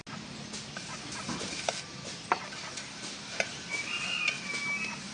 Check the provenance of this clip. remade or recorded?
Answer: recorded